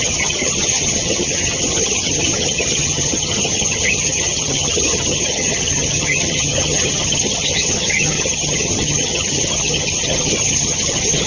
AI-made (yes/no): yes